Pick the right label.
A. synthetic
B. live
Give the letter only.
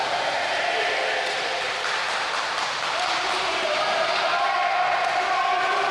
B